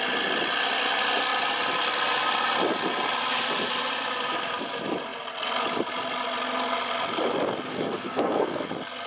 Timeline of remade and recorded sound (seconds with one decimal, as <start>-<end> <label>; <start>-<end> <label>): 0.0-7.7 recorded; 7.7-8.7 remade; 8.7-9.1 recorded